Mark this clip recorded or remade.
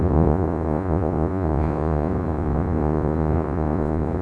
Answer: remade